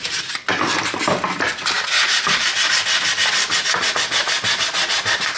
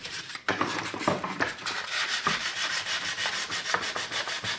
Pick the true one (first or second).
first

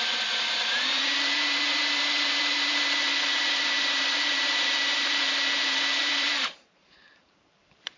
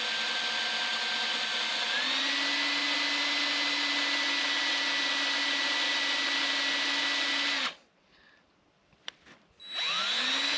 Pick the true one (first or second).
second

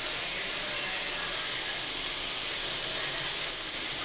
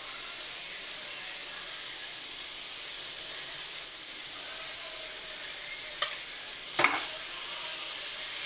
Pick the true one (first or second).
first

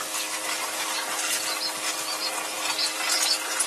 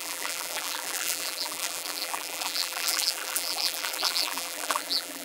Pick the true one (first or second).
first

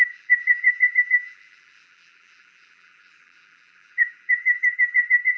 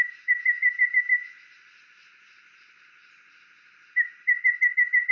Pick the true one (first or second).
second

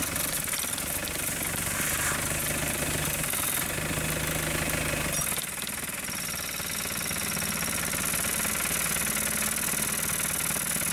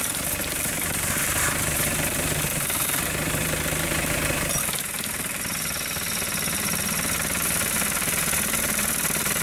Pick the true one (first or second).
first